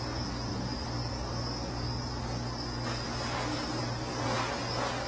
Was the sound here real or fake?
real